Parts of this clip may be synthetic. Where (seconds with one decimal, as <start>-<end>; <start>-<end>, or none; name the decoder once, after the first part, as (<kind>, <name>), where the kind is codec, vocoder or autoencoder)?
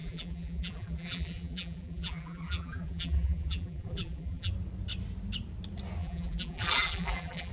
0.0-4.5 (vocoder, BigVGAN v2); 6.0-7.5